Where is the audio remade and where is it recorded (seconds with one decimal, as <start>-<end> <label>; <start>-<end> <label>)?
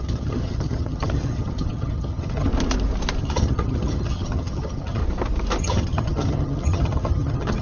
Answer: 0.0-2.5 remade; 2.5-3.2 recorded; 3.2-5.0 remade; 5.0-5.6 recorded; 5.6-7.6 remade